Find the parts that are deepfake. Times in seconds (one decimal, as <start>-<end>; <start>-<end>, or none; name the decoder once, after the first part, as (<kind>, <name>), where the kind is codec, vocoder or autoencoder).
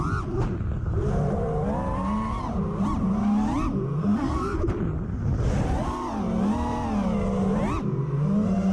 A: 4.0-4.6 (codec, SNAC)